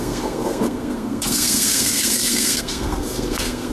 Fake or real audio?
fake